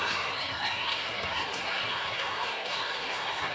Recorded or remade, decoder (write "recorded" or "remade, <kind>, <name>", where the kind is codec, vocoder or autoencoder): remade, codec, SNAC